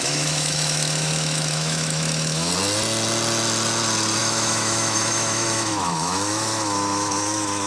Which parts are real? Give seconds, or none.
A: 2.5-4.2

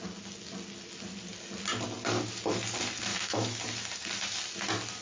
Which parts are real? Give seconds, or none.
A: 0.0-3.1; 3.6-5.0

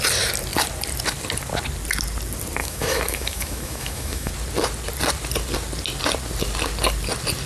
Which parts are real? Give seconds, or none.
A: 0.0-2.6; 4.3-7.5

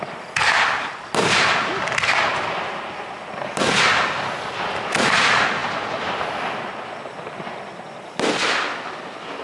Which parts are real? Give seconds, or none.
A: 0.0-9.4

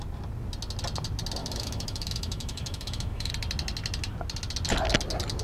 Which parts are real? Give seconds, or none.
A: 0.0-1.4; 3.3-5.4

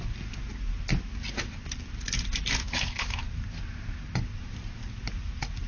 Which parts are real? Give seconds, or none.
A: 0.0-2.6; 3.2-5.7